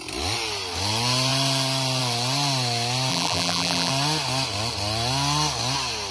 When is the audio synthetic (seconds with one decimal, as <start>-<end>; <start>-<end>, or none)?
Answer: 3.1-3.9